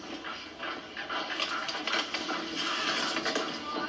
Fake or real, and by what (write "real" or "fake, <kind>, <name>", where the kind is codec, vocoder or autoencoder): real